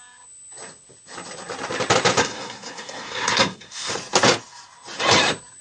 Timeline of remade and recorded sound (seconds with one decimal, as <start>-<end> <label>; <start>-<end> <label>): 0.0-2.2 recorded; 2.2-3.9 remade; 3.9-5.6 recorded